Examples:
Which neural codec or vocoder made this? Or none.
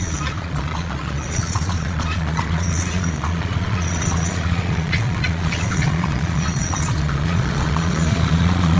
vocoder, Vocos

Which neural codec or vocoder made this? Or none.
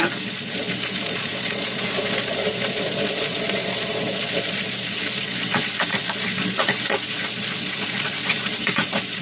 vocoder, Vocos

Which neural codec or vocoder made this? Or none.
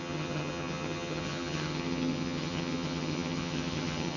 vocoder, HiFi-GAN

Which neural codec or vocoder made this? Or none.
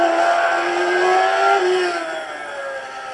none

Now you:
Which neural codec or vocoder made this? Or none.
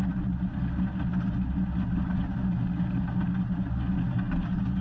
none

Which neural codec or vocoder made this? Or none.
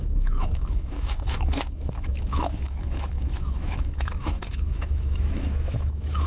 autoencoder, DAC-VAE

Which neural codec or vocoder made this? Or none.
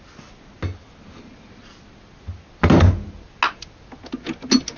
none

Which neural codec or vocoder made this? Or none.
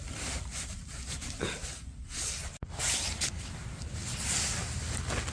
none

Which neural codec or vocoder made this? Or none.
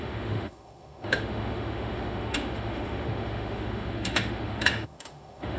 autoencoder, DAC-VAE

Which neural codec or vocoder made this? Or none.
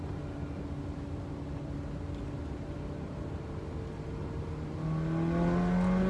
none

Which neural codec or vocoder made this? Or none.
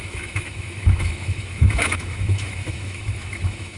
autoencoder, DAC-VAE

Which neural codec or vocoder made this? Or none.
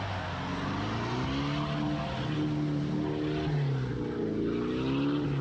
none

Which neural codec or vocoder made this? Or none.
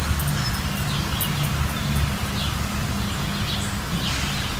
none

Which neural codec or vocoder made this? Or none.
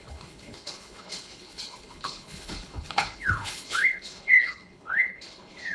codec, HILCodec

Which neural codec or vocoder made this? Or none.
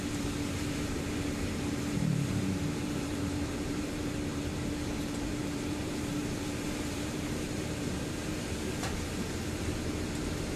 vocoder, BigVGAN v2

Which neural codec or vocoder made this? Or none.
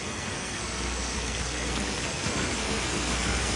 codec, SNAC